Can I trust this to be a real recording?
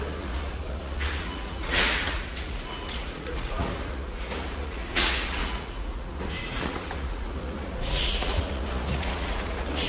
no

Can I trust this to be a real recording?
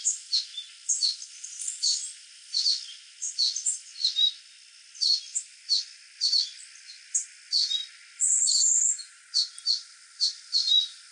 yes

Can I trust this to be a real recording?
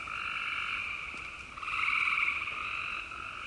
yes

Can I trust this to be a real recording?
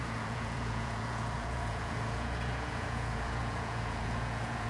no